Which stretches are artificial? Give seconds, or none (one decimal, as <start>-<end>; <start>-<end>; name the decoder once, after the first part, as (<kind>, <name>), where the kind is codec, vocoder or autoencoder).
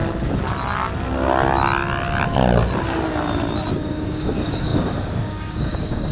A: 3.7-6.1 (codec, DAC)